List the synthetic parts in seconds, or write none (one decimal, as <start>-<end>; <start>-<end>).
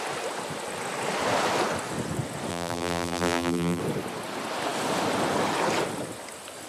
2.5-3.8